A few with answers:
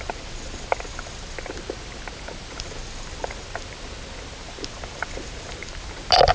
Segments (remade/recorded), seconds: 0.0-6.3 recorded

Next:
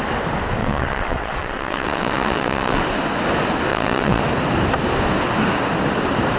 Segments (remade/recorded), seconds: 0.0-0.6 recorded; 0.6-2.8 remade; 2.8-3.7 recorded; 3.7-4.2 remade; 4.2-6.4 recorded

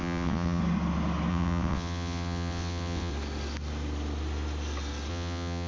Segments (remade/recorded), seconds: 0.0-0.6 remade; 0.6-1.3 recorded; 1.3-3.1 remade; 3.1-5.1 recorded; 5.1-5.7 remade

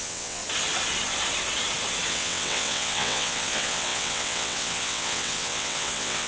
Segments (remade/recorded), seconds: 0.0-0.4 remade; 0.4-2.1 recorded; 2.1-6.3 remade

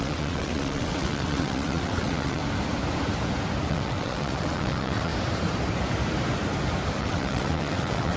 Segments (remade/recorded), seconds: 0.0-2.4 remade; 2.4-3.7 recorded; 3.7-5.1 remade; 5.1-7.0 recorded; 7.0-8.2 remade

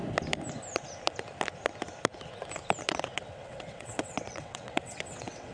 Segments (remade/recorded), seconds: 0.0-2.8 recorded; 2.8-5.5 remade

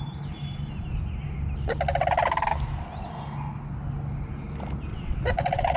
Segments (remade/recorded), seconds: 0.0-4.9 recorded; 4.9-5.8 remade